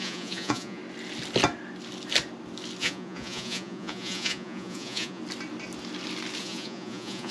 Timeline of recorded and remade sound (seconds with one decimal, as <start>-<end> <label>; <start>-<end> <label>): 0.0-0.8 remade; 0.8-2.8 recorded; 2.8-5.2 remade; 5.2-6.4 recorded; 6.4-7.3 remade